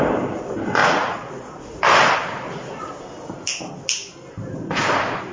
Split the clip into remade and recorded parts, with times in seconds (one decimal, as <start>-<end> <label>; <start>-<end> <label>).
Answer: 0.0-0.8 recorded; 0.8-1.8 remade; 1.8-5.3 recorded

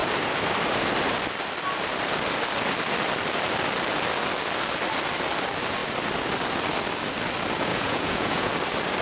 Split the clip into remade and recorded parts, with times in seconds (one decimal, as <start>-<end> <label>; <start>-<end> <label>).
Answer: 0.0-7.7 recorded; 7.7-8.5 remade; 8.5-9.0 recorded

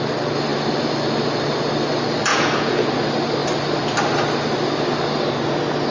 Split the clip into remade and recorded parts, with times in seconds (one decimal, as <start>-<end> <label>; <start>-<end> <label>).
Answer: 0.0-2.3 recorded; 2.3-2.9 remade; 2.9-5.9 recorded

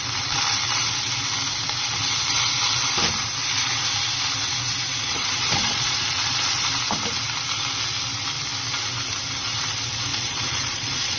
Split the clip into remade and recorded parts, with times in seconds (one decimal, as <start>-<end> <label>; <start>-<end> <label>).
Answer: 0.0-5.0 recorded; 5.0-6.6 remade; 6.6-10.1 recorded; 10.1-11.2 remade

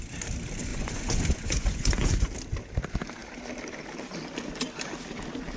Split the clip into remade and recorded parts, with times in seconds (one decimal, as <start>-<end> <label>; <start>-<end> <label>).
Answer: 0.0-0.7 recorded; 0.7-2.1 remade; 2.1-5.6 recorded

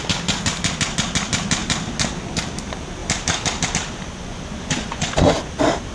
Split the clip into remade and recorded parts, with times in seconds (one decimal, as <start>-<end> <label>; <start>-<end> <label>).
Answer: 0.0-4.2 recorded; 4.2-5.5 remade; 5.5-5.9 recorded

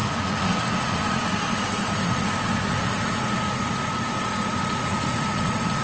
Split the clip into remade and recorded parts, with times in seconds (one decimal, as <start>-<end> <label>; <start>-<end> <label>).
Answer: 0.0-5.8 remade

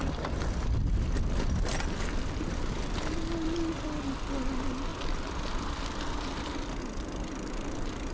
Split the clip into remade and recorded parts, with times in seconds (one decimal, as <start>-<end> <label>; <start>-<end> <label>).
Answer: 0.0-8.1 recorded